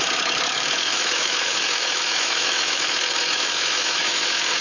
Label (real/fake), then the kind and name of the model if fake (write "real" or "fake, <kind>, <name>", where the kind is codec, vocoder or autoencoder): fake, autoencoder, DAC-VAE